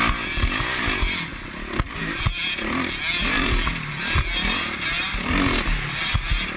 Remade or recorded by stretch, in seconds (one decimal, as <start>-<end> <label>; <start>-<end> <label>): 0.0-6.6 recorded